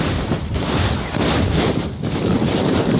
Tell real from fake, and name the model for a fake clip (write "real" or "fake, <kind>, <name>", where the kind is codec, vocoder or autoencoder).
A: fake, vocoder, BigVGAN v2